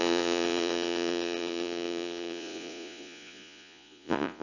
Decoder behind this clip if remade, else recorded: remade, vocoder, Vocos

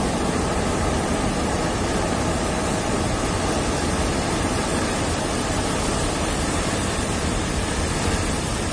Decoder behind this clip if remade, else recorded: recorded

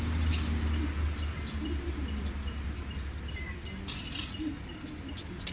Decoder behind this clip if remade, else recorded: recorded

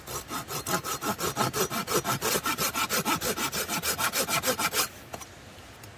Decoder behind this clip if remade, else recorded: recorded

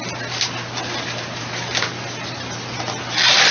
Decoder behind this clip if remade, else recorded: recorded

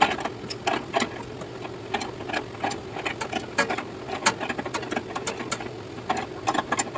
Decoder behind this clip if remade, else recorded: recorded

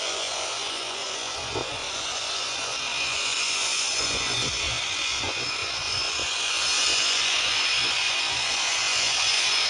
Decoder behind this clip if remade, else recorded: remade, vocoder, Vocos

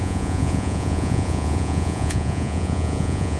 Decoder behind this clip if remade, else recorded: remade, vocoder, Vocos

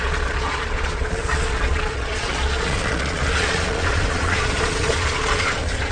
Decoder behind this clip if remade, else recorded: remade, vocoder, Vocos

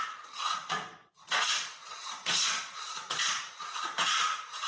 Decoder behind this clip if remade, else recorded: remade, vocoder, Vocos